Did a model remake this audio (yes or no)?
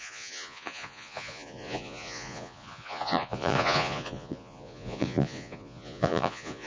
yes